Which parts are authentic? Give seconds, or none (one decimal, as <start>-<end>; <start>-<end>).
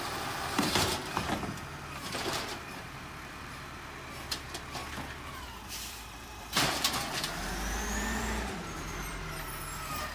4.8-5.4